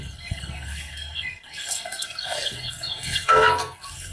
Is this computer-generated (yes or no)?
yes